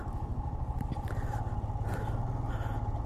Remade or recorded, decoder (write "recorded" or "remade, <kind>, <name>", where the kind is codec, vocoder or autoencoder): recorded